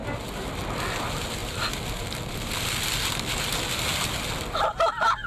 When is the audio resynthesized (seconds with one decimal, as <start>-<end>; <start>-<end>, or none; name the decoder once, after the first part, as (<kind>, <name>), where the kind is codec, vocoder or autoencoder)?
none